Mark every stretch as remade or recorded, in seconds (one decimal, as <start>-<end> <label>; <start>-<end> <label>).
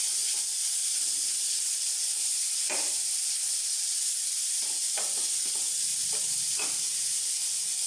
0.0-0.8 recorded; 0.8-1.7 remade; 1.7-2.2 recorded; 2.2-3.5 remade; 3.5-5.9 recorded; 5.9-7.2 remade; 7.2-7.9 recorded